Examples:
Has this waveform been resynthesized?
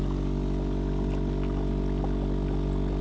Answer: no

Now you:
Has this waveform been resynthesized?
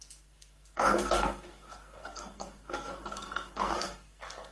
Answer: yes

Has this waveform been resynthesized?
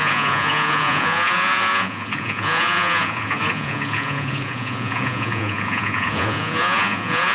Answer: yes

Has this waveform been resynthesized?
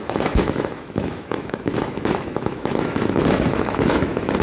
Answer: yes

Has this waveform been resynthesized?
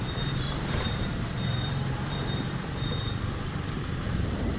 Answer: yes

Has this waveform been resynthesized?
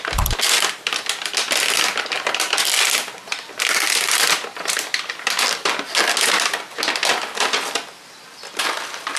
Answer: no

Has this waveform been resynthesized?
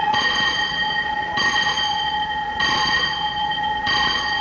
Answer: yes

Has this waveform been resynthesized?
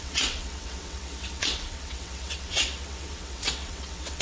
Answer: yes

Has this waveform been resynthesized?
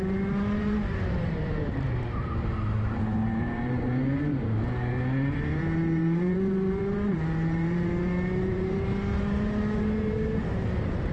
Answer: yes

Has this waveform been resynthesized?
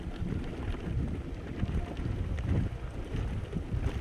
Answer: no